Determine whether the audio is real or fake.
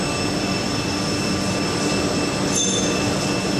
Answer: real